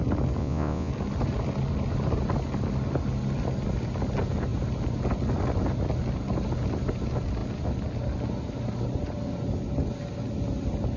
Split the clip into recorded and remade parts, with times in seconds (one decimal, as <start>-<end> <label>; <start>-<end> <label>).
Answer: 0.0-0.4 recorded; 0.4-0.9 remade; 0.9-11.0 recorded

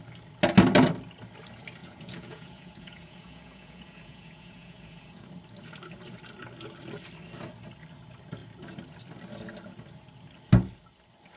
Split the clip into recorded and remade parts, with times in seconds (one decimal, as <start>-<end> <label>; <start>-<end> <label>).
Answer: 0.0-1.8 recorded; 1.8-5.3 remade; 5.3-11.4 recorded